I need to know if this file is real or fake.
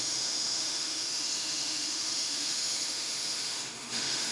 fake